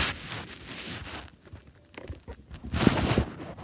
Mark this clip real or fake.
real